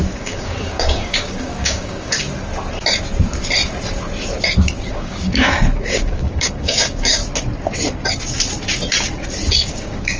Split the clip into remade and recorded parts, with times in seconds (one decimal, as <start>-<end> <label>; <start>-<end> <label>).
0.0-2.2 remade; 2.2-4.9 recorded; 4.9-7.2 remade; 7.2-9.5 recorded; 9.5-10.2 remade